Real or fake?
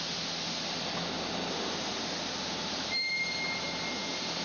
real